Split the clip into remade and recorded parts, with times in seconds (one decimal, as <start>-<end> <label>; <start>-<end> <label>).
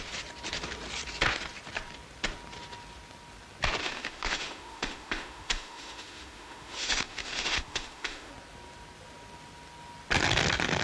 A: 0.0-3.8 recorded; 3.8-8.3 remade; 8.3-10.8 recorded